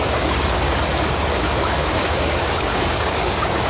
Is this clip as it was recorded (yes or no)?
no